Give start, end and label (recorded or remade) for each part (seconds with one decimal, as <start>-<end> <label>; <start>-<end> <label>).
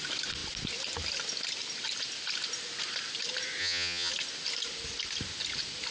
0.0-3.6 recorded; 3.6-4.1 remade; 4.1-5.9 recorded